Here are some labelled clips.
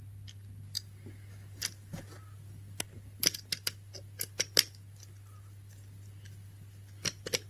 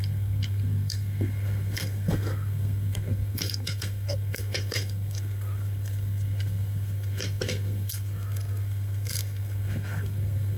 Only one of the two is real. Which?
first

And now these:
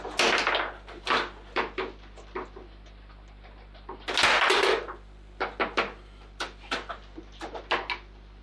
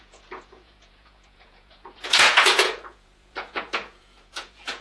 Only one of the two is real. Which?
first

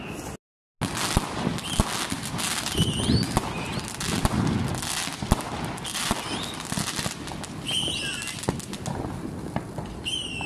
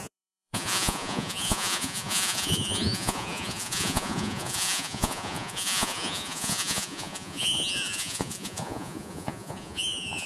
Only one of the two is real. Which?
first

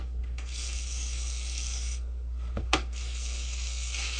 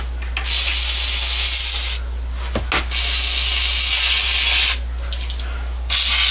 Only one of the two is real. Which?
second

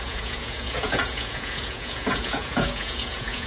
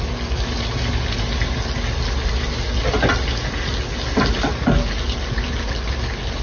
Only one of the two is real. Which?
second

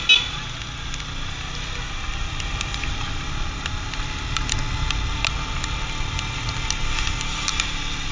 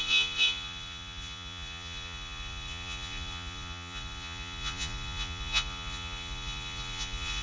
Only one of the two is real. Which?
first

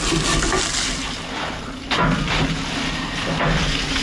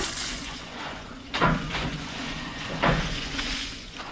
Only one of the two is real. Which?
first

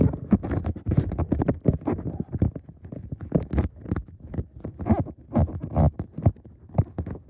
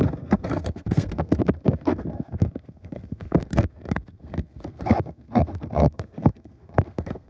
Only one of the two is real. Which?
first